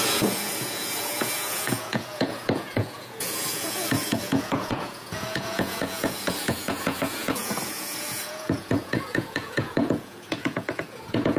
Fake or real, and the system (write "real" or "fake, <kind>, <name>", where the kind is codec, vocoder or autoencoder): fake, vocoder, Vocos